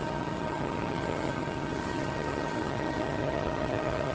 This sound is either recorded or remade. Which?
remade